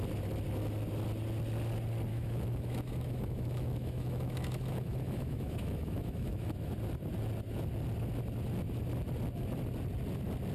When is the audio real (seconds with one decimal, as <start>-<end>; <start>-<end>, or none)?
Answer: 0.0-2.1; 6.7-10.5